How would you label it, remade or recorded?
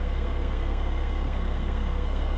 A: remade